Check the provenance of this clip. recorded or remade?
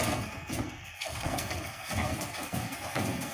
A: remade